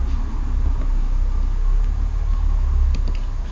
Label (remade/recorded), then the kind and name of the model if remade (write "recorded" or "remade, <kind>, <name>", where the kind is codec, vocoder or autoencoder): recorded